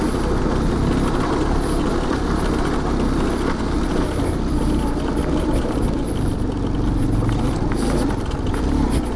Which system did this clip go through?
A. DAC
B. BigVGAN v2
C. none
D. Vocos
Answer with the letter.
C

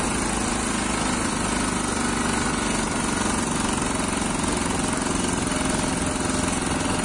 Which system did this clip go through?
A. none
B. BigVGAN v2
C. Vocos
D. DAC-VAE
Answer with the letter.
A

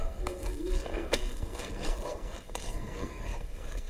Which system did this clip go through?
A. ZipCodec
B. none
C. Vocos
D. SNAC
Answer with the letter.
D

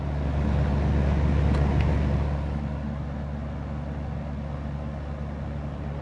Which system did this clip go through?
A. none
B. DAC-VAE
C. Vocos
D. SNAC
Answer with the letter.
A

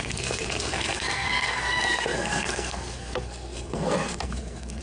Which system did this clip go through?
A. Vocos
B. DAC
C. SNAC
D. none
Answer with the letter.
C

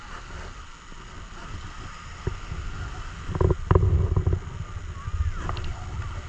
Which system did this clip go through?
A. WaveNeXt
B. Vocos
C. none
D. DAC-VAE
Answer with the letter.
C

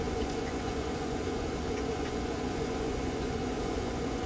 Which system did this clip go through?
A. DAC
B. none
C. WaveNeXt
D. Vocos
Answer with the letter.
D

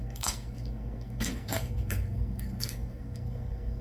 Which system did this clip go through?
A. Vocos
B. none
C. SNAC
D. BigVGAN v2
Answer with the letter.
C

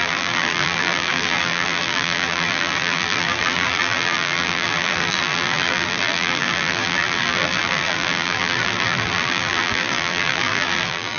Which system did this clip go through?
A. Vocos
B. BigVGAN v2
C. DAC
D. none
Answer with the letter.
B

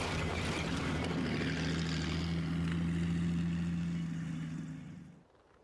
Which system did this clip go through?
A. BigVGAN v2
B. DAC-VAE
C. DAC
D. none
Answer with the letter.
D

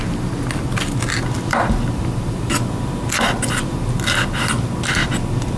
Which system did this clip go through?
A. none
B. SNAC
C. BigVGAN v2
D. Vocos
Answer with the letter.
A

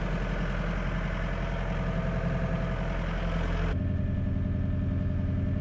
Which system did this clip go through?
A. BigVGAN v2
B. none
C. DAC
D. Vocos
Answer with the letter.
B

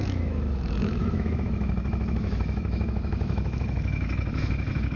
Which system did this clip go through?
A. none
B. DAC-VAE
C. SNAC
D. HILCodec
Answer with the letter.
B